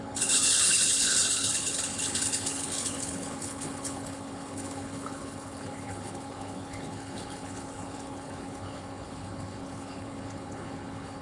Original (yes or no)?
no